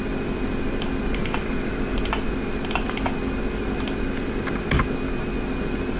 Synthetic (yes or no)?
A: no